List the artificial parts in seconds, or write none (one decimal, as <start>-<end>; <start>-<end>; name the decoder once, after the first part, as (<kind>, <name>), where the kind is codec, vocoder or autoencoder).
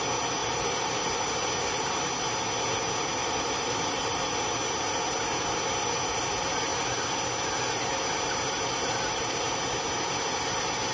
0.4-1.0 (vocoder, BigVGAN v2); 3.2-4.3